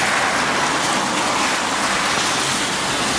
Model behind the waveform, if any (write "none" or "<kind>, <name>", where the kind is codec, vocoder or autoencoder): none